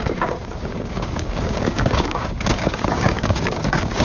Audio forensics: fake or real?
fake